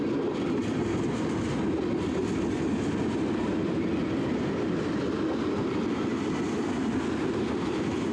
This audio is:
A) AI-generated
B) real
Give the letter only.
B